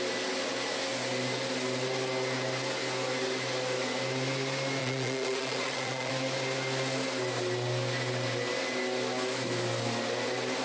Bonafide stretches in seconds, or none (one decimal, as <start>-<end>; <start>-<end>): 0.0-4.8; 6.1-10.6